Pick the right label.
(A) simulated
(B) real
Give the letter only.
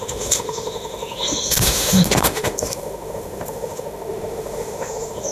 A